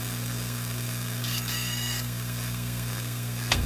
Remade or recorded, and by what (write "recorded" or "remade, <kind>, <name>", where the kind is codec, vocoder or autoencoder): remade, codec, SNAC